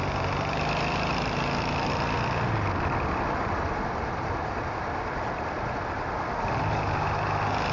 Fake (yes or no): no